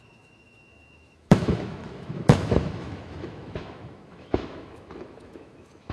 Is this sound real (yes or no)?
no